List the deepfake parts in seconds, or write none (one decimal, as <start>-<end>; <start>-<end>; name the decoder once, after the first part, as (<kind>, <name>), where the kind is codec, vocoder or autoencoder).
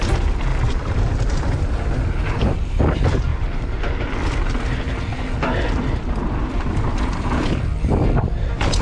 0.5-1.5 (vocoder, BigVGAN v2)